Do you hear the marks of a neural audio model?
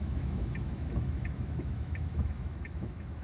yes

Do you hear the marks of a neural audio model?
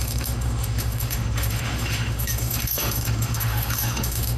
yes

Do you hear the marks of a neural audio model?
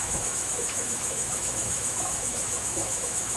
yes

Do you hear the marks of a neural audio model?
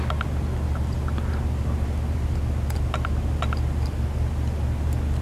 no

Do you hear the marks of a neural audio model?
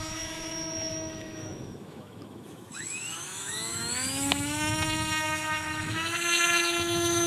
yes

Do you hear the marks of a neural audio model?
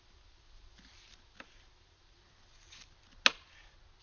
no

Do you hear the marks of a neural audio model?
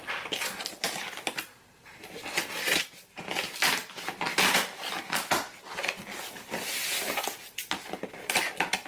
no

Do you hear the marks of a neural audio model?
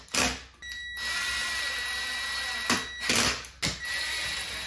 no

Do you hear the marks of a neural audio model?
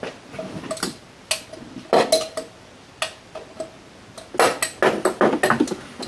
no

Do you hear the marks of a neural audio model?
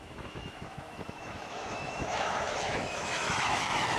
yes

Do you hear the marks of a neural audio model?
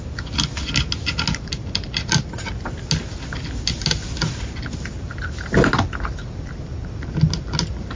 no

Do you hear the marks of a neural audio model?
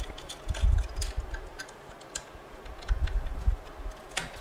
no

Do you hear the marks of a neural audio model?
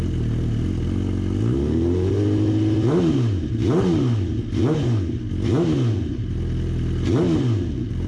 no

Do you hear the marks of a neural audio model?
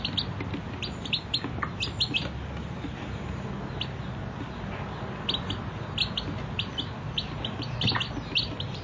no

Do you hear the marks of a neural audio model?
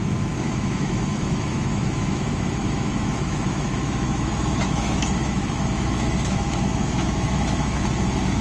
yes